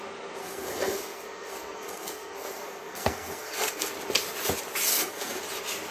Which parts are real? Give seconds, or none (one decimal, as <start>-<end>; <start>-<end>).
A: 0.0-0.4; 3.9-4.9; 5.4-5.9